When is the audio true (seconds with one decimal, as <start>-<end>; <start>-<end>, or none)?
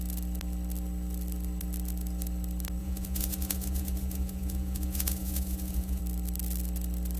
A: 0.0-2.8; 6.0-7.2